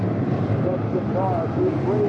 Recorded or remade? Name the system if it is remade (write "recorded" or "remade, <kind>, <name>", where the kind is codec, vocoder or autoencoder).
remade, vocoder, BigVGAN v2